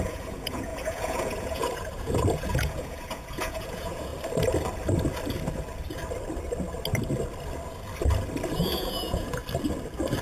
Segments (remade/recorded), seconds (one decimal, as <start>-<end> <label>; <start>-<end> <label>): 0.0-4.1 remade; 4.1-8.5 recorded; 8.5-9.4 remade; 9.4-10.2 recorded